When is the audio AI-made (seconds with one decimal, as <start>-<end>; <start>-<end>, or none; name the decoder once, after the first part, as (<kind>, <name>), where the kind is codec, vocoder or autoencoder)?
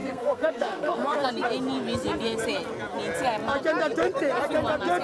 0.0-1.3 (codec, SNAC)